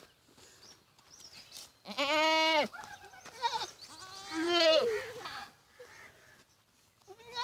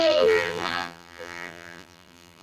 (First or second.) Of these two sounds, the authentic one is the first